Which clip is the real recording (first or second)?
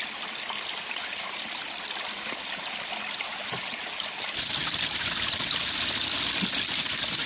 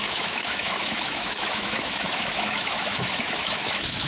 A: first